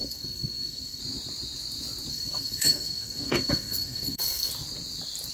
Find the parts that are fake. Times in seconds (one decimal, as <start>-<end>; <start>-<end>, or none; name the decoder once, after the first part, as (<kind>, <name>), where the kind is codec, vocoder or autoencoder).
0.0-1.0 (codec, SNAC); 2.1-4.5